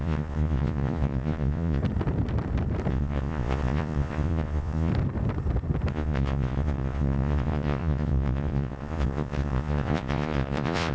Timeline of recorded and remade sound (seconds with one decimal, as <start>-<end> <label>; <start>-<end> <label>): 0.0-1.8 remade; 1.8-2.9 recorded; 2.9-4.9 remade; 4.9-5.9 recorded; 5.9-10.9 remade